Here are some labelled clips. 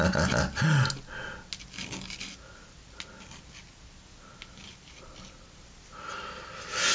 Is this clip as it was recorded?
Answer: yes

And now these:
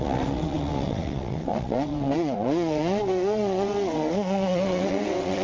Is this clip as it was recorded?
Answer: no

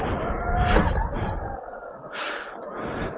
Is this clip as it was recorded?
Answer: yes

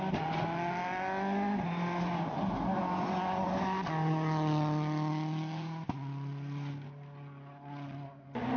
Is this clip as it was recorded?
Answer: yes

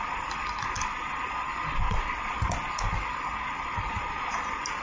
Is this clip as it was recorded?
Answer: yes